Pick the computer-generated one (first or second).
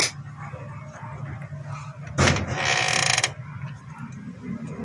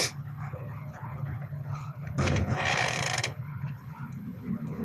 second